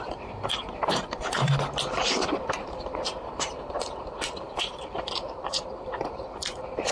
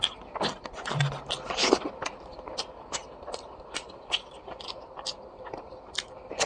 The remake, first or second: first